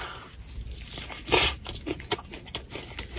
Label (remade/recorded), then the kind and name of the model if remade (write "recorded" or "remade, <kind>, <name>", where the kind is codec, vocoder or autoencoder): recorded